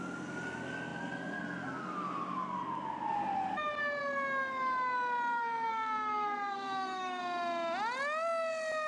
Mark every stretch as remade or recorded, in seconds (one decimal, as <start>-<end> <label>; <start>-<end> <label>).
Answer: 0.0-5.3 recorded; 5.3-7.2 remade; 7.2-8.9 recorded